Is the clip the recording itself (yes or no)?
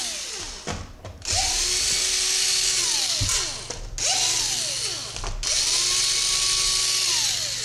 yes